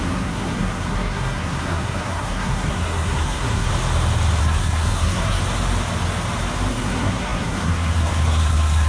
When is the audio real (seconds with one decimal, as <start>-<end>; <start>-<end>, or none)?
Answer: 3.7-4.4; 5.4-6.7